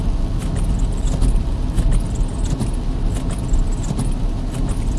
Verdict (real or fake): real